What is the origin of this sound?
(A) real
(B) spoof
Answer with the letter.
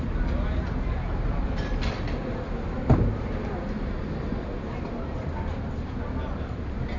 A